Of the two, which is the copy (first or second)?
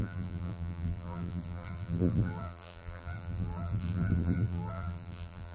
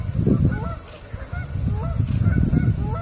first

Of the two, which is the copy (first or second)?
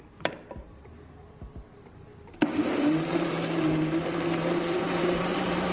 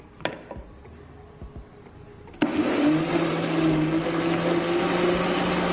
first